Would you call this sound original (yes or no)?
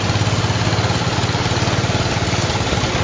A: yes